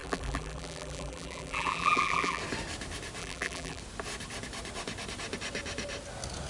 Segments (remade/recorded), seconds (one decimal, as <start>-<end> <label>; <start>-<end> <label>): 0.0-2.4 remade; 2.4-3.2 recorded; 3.2-3.8 remade; 3.8-6.5 recorded